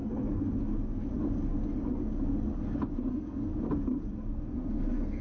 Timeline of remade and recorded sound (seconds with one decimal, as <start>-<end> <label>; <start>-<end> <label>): 0.0-3.1 recorded; 3.1-3.5 remade; 3.5-4.3 recorded; 4.3-5.2 remade